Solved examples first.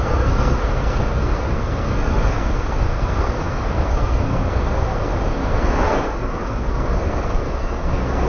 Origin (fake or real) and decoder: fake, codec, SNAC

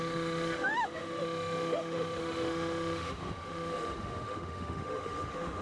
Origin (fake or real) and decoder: fake, autoencoder, DAC-VAE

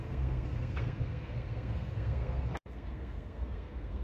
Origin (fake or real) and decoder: fake, codec, SNAC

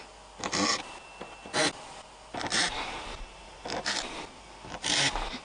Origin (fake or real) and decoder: real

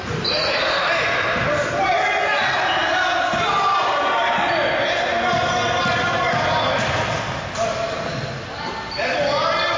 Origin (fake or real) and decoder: real